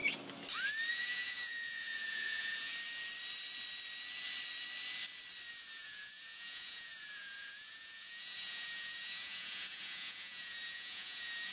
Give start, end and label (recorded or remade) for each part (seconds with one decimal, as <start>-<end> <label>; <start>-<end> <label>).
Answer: 0.0-0.9 recorded; 0.9-2.7 remade; 2.7-5.5 recorded; 5.5-11.5 remade